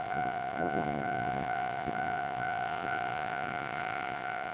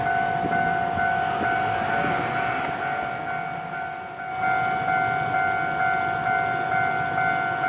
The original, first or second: second